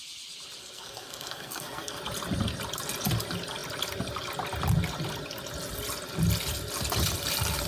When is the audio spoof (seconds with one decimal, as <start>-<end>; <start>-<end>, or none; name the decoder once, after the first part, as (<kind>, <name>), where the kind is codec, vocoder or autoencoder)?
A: 0.6-2.0 (codec, SNAC)